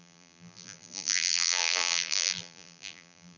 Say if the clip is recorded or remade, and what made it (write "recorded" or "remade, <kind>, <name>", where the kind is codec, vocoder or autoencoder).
remade, vocoder, BigVGAN v2